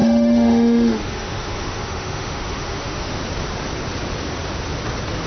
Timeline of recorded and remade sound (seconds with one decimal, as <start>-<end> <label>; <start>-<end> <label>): 0.0-3.2 remade; 3.2-5.3 recorded